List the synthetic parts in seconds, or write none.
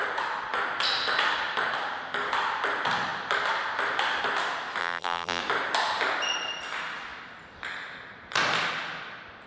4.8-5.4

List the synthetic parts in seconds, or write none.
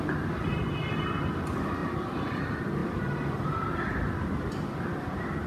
1.8-2.4; 2.8-5.0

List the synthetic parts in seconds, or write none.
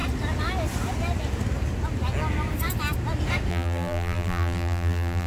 3.5-5.3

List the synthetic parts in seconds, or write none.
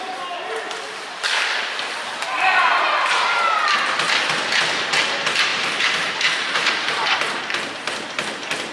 5.5-7.4